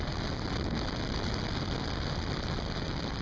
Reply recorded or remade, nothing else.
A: recorded